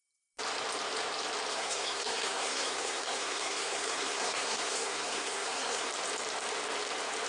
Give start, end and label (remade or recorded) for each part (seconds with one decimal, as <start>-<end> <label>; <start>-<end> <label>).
0.0-1.5 recorded; 1.5-5.9 remade; 5.9-7.3 recorded